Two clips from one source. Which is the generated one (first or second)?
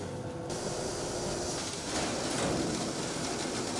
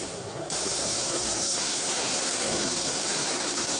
second